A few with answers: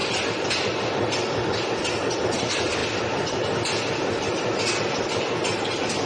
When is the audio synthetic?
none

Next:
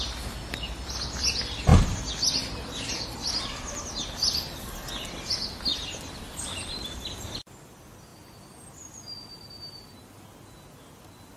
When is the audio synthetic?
none

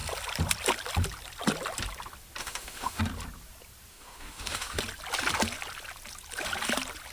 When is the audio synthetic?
2.4-3.0 (autoencoder, DAC-VAE); 3.9-4.8

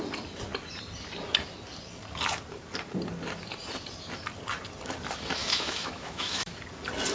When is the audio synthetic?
5.4-6.6 (autoencoder, DAC-VAE)

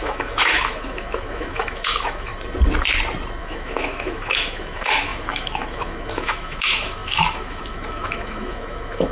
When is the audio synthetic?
0.0-2.3 (autoencoder, DAC-VAE); 3.4-9.1